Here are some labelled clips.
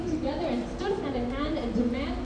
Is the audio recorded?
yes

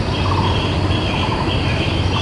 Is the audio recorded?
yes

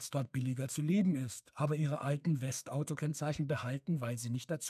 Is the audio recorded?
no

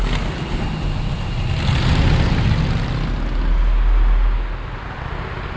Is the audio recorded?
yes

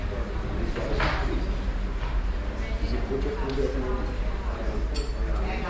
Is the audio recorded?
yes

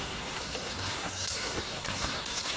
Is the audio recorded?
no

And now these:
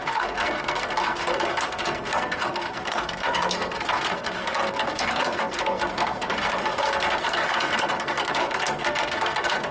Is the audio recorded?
no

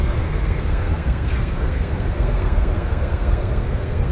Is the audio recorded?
no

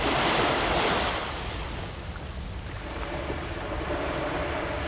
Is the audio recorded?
yes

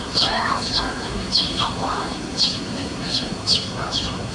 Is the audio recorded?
no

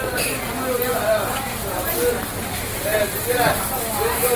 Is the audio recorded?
yes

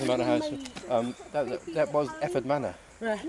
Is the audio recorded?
yes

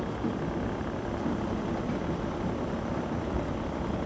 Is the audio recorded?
yes